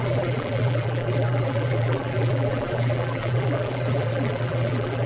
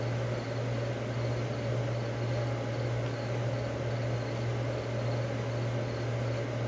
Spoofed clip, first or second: first